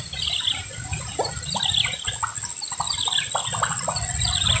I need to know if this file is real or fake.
real